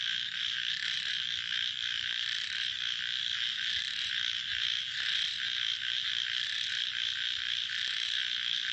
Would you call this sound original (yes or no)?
yes